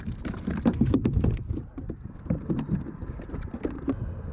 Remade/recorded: recorded